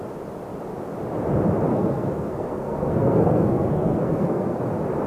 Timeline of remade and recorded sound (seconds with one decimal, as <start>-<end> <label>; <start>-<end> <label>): 0.0-1.7 recorded; 1.7-4.6 remade; 4.6-5.1 recorded

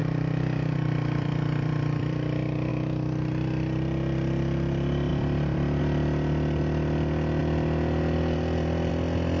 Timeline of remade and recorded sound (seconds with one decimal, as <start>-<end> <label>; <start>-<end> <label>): 0.0-2.7 remade; 2.7-5.1 recorded; 5.1-5.8 remade; 5.8-9.4 recorded

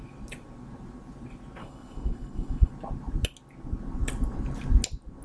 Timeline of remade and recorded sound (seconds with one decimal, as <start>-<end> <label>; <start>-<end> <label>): 0.0-1.6 recorded; 1.6-2.7 remade; 2.7-5.2 recorded

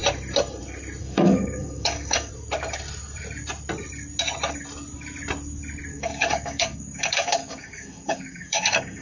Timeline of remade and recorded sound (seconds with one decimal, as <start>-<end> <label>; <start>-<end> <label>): 0.0-1.0 recorded; 1.0-2.3 remade; 2.3-5.9 recorded; 5.9-9.0 remade

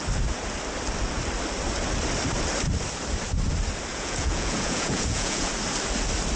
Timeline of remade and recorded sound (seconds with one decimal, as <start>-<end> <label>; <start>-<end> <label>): 0.0-3.9 recorded; 3.9-5.5 remade; 5.5-6.4 recorded

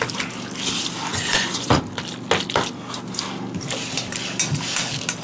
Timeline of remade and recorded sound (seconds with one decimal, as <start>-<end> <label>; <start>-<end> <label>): 0.0-1.1 recorded; 1.1-1.8 remade; 1.8-5.2 recorded

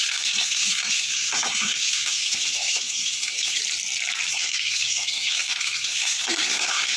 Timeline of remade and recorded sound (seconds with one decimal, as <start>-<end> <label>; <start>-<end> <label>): 0.0-3.6 remade; 3.6-4.3 recorded; 4.3-7.0 remade